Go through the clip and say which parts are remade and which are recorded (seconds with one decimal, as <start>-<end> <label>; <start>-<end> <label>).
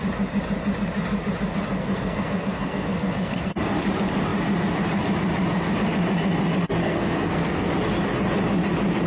0.0-1.8 recorded; 1.8-3.5 remade; 3.5-6.8 recorded; 6.8-7.7 remade; 7.7-9.1 recorded